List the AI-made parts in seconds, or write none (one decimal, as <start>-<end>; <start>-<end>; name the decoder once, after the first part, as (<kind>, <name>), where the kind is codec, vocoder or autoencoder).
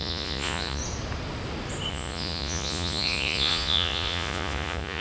0.0-0.8 (vocoder, Vocos); 1.9-5.0